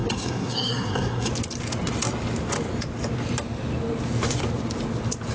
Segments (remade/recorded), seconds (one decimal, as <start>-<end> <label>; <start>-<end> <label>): 0.0-1.3 remade; 1.3-5.3 recorded